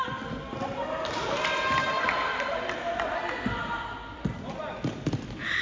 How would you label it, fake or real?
real